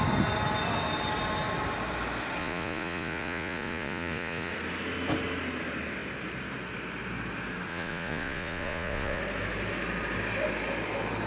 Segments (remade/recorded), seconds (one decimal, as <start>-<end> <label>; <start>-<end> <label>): 0.0-2.4 recorded; 2.4-4.5 remade; 4.5-7.7 recorded; 7.7-9.2 remade; 9.2-11.3 recorded